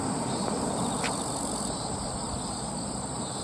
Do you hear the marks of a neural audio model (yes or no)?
no